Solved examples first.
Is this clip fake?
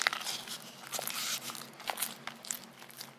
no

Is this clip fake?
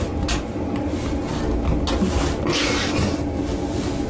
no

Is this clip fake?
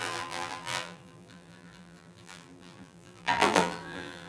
yes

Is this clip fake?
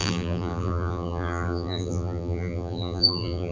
yes